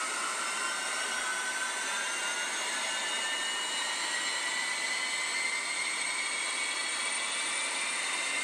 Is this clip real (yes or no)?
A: yes